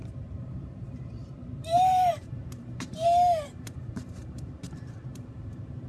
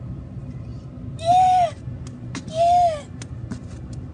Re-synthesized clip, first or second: first